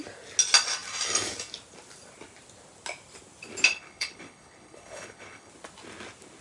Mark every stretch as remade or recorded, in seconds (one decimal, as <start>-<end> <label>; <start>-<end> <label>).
0.0-3.7 recorded; 3.7-5.5 remade; 5.5-6.4 recorded